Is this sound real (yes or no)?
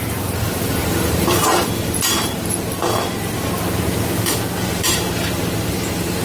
no